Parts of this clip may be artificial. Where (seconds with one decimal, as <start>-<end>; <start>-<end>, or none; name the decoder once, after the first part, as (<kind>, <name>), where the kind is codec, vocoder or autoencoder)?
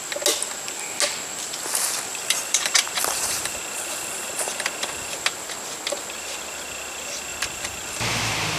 2.1-3.6 (vocoder, BigVGAN v2)